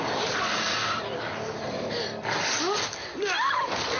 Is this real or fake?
real